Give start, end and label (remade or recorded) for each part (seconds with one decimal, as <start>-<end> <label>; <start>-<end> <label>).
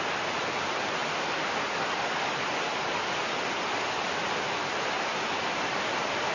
0.0-6.3 recorded